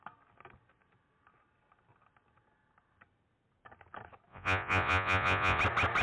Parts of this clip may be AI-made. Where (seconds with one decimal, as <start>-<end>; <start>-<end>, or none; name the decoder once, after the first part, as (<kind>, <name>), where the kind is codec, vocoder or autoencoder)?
4.3-5.6 (vocoder, Vocos)